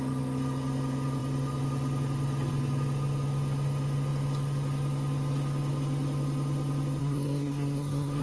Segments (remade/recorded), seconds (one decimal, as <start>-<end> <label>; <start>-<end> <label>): 0.0-7.0 recorded; 7.0-8.2 remade